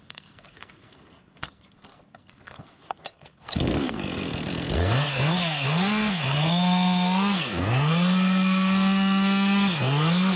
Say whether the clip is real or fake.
fake